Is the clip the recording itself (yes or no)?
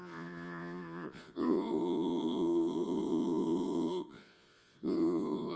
no